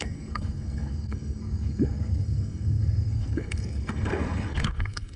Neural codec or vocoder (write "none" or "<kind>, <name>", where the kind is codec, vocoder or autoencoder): codec, SNAC